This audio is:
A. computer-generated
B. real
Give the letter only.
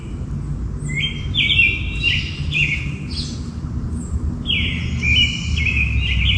B